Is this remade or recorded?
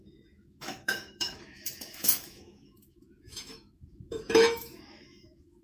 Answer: remade